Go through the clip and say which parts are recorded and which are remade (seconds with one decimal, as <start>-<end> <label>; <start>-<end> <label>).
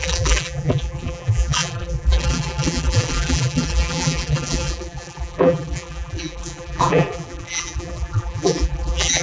0.0-9.2 remade